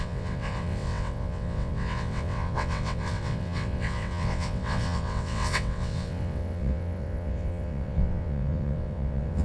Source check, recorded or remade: remade